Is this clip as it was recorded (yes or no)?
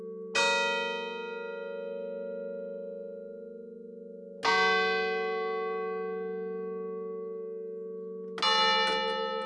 yes